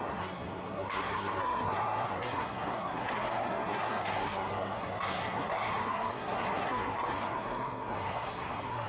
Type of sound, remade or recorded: remade